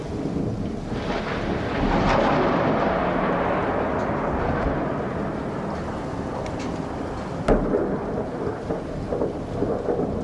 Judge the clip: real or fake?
real